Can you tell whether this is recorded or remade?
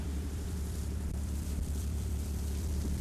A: remade